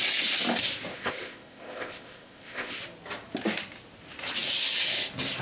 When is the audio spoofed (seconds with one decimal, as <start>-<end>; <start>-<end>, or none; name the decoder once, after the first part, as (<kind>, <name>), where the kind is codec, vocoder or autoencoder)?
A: 0.9-2.8 (codec, ZipCodec)